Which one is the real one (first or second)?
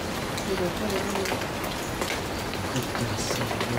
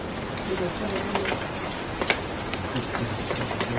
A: first